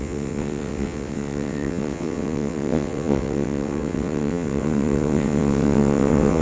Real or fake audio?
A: fake